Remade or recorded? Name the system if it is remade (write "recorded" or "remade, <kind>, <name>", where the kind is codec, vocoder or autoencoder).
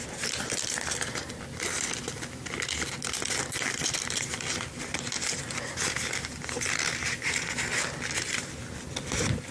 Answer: recorded